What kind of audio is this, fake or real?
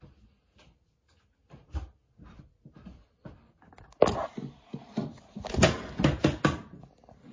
real